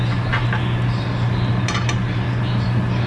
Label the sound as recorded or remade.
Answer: recorded